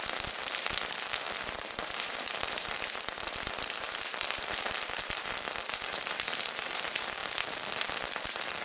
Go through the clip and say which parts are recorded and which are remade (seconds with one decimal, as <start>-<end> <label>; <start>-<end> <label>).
0.0-7.2 remade; 7.2-7.9 recorded; 7.9-8.6 remade